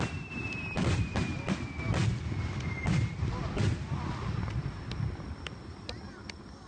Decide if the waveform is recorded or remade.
recorded